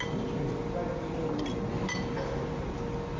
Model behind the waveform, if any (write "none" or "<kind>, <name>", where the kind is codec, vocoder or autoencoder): none